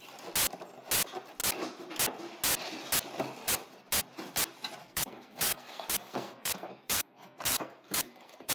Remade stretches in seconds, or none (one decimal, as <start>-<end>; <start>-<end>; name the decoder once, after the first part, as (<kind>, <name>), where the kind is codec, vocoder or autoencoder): 4.8-8.5 (codec, SNAC)